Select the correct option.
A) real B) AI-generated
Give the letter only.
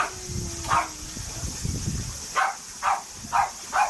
A